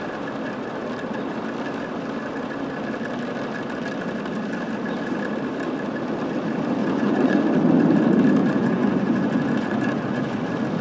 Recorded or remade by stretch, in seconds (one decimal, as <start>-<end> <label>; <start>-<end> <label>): 0.0-6.8 recorded; 6.8-7.4 remade; 7.4-8.4 recorded; 8.4-10.4 remade; 10.4-10.8 recorded